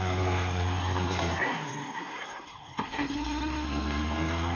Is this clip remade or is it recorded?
remade